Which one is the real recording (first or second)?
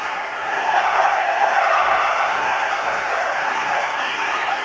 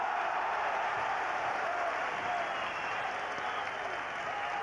second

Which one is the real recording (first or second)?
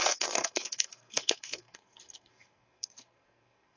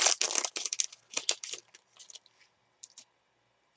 second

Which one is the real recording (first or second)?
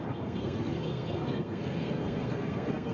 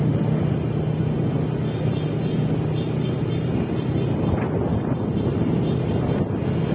second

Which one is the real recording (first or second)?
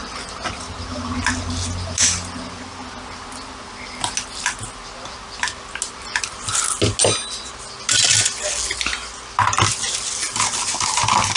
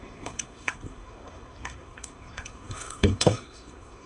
first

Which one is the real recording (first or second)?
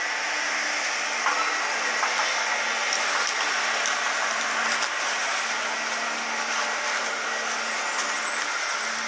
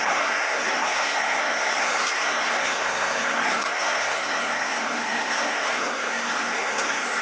first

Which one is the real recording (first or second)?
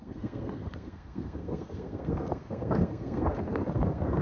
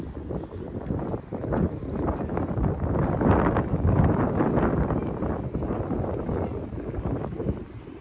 second